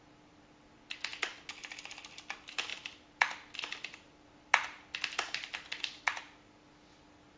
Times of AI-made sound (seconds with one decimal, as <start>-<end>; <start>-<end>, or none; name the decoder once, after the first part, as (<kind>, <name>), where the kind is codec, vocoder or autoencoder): none